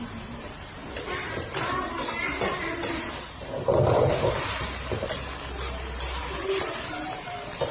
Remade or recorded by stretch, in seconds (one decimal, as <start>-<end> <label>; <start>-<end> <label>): 0.0-3.4 remade; 3.4-6.6 recorded; 6.6-7.7 remade